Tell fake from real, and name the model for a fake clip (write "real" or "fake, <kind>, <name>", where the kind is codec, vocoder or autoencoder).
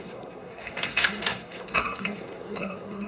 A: fake, codec, SNAC